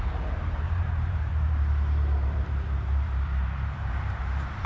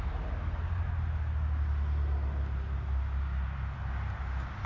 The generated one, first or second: first